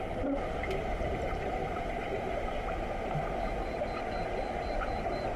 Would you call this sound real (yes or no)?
no